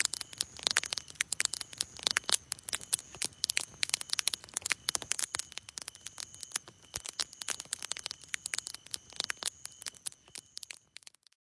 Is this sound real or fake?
real